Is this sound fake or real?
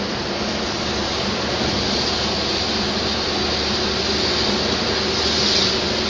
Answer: real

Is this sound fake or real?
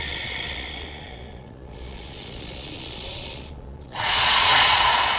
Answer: fake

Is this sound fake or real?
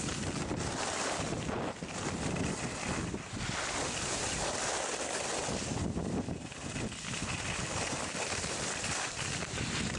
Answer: real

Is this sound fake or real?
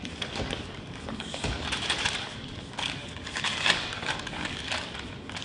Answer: fake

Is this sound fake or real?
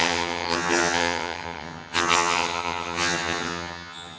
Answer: fake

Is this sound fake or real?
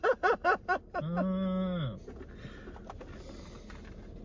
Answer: real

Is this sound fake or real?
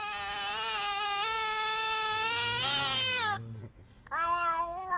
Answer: real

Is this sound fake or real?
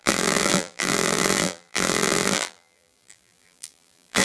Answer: fake